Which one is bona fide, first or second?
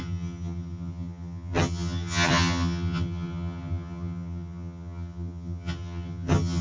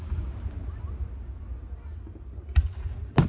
second